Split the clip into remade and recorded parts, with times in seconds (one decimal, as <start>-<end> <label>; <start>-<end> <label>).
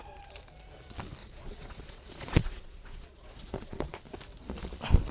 0.0-1.2 recorded; 1.2-4.0 remade; 4.0-5.1 recorded